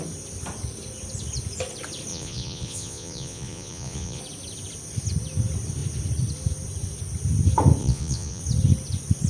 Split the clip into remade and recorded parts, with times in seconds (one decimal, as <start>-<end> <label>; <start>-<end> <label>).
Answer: 0.0-2.1 recorded; 2.1-4.2 remade; 4.2-7.8 recorded; 7.8-8.4 remade; 8.4-9.3 recorded

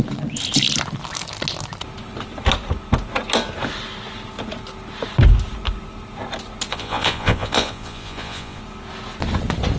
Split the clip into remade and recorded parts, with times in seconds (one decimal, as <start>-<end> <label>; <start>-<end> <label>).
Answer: 0.0-6.7 recorded; 6.7-8.6 remade; 8.6-9.8 recorded

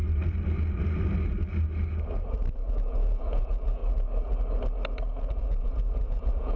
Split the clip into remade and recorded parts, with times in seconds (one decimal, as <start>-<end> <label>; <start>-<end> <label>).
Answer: 0.0-2.7 recorded; 2.7-3.8 remade; 3.8-5.3 recorded; 5.3-6.6 remade

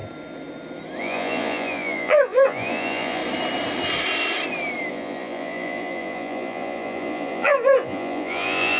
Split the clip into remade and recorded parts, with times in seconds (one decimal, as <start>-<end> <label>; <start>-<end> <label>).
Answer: 0.0-1.0 recorded; 1.0-3.2 remade; 3.2-4.9 recorded; 4.9-8.8 remade